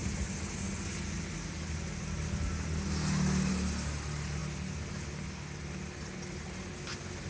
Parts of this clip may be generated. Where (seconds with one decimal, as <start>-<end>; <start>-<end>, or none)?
none